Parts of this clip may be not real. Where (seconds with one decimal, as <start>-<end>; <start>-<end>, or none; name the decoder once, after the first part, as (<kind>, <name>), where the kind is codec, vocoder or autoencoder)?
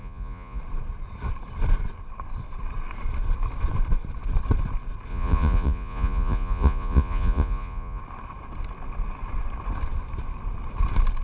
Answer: 0.0-0.6 (vocoder, Vocos); 5.1-8.0